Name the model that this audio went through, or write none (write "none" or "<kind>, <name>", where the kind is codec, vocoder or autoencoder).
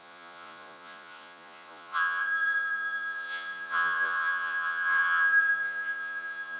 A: vocoder, Vocos